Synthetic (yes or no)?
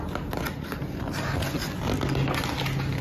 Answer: no